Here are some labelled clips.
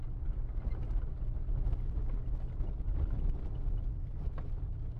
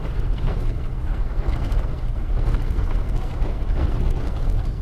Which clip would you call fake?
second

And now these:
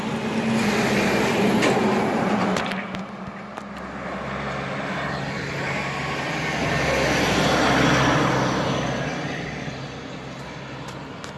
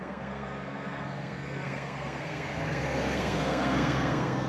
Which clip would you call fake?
second